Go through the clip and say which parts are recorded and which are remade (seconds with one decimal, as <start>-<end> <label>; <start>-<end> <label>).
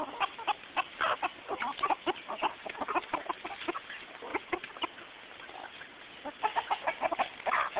0.0-7.8 recorded